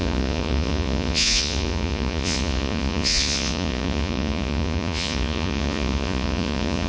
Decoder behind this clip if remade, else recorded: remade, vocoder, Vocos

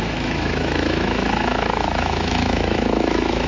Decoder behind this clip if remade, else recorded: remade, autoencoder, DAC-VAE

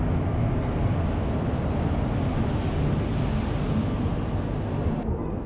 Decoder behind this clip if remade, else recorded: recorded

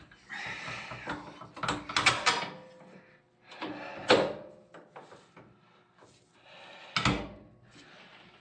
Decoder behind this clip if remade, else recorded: recorded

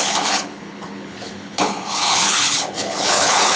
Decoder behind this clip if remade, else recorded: remade, codec, HILCodec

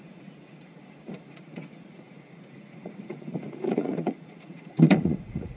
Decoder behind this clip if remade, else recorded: remade, vocoder, Vocos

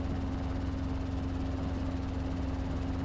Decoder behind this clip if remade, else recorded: recorded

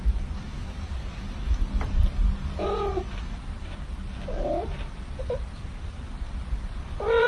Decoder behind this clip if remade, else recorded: remade, vocoder, BigVGAN v2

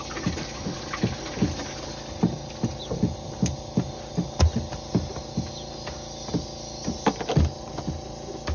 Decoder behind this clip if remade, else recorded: recorded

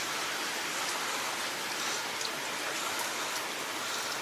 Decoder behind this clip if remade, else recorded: recorded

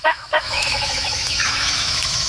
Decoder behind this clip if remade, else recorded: remade, autoencoder, DAC-VAE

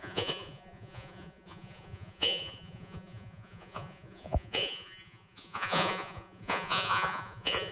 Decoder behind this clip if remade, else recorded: remade, vocoder, Vocos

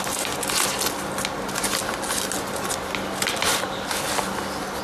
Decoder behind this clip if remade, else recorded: recorded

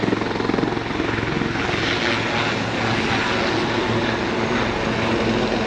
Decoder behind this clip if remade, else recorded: recorded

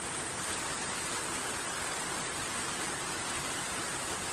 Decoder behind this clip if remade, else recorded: recorded